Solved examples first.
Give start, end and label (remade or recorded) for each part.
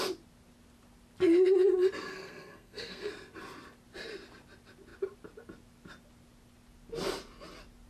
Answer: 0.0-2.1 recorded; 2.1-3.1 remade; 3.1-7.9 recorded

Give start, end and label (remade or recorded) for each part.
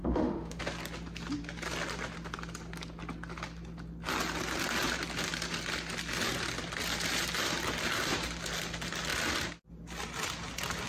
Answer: 0.0-0.6 remade; 0.6-10.9 recorded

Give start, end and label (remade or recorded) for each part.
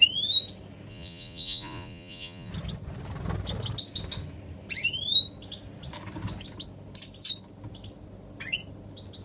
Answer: 0.0-0.9 recorded; 0.9-2.5 remade; 2.5-9.2 recorded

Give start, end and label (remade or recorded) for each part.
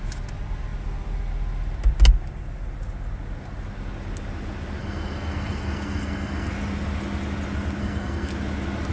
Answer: 0.0-4.8 recorded; 4.8-6.5 remade; 6.5-7.8 recorded; 7.8-8.3 remade; 8.3-8.9 recorded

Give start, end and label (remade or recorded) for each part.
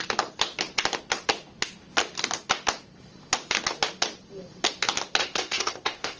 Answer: 0.0-5.2 recorded; 5.2-6.2 remade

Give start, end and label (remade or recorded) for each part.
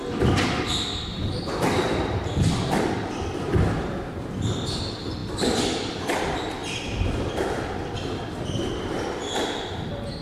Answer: 0.0-10.2 recorded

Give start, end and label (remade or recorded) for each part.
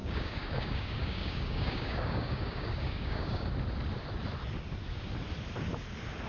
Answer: 0.0-3.5 remade; 3.5-6.3 recorded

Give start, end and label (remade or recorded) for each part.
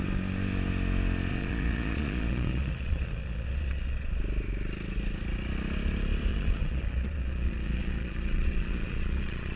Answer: 0.0-1.3 recorded; 1.3-4.2 remade; 4.2-6.3 recorded; 6.3-9.6 remade